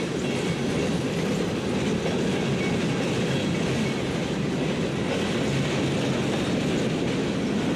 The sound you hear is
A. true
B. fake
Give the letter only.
A